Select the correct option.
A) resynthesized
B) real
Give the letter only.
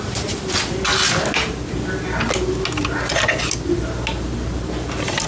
B